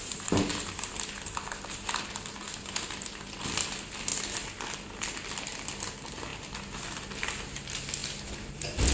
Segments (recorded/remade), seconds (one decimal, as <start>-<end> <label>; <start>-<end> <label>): 0.0-8.9 recorded